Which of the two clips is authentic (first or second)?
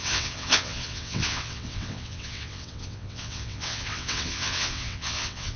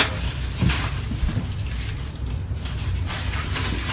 second